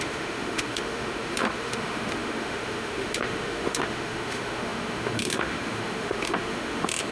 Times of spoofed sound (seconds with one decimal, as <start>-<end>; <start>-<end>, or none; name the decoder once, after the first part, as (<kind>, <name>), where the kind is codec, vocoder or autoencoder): 0.0-7.1 (autoencoder, DAC-VAE)